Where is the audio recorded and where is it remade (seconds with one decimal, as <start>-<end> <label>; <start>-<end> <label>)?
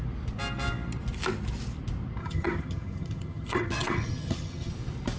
0.0-2.2 recorded; 2.2-4.7 remade; 4.7-5.2 recorded